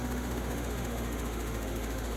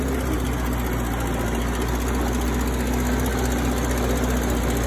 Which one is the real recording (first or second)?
second